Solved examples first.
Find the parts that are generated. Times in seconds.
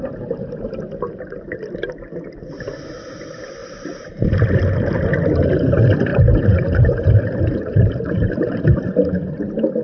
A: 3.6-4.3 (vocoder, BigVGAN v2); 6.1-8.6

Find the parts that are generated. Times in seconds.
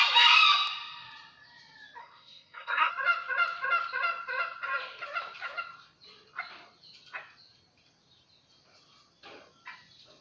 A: 2.0-2.9 (codec, SNAC)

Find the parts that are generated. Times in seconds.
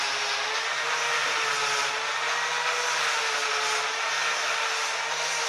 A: none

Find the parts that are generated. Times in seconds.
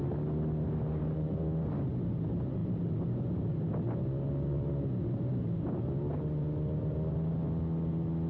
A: none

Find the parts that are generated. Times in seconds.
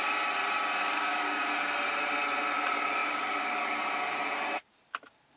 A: 0.8-1.5 (codec, DAC); 3.0-3.9